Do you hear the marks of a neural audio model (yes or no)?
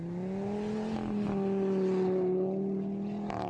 no